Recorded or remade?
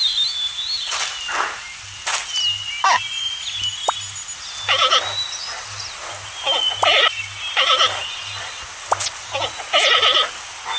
recorded